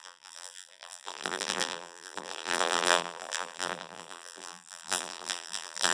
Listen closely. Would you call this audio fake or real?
fake